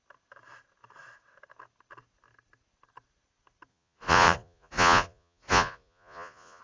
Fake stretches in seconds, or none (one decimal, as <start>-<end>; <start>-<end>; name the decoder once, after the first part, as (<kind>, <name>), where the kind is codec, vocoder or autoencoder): 3.7-6.6 (vocoder, Vocos)